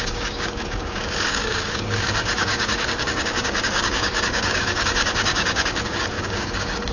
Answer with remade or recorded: remade